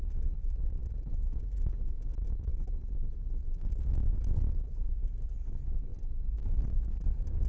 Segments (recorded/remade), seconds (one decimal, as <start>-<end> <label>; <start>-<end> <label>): 0.0-7.5 recorded